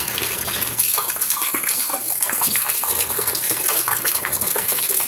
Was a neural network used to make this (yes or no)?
yes